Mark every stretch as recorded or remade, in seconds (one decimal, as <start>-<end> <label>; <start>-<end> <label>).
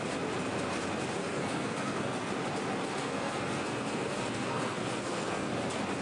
0.0-1.2 recorded; 1.2-2.3 remade; 2.3-3.0 recorded; 3.0-5.5 remade; 5.5-6.0 recorded